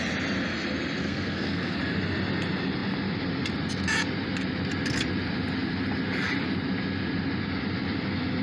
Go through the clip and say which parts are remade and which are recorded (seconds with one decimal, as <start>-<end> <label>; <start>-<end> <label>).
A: 0.0-1.0 recorded; 1.0-1.8 remade; 1.8-8.4 recorded